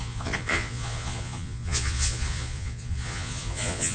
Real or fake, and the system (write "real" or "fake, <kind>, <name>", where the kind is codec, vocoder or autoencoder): fake, vocoder, Vocos